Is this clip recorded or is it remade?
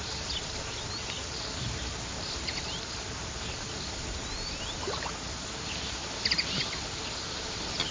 recorded